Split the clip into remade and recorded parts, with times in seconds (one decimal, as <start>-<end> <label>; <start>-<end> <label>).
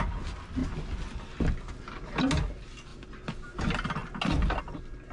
0.0-5.1 recorded